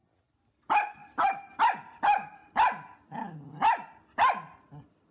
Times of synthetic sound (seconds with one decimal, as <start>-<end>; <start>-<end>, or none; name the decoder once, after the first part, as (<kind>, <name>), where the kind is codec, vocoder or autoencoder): 1.0-1.6 (vocoder, BigVGAN v2)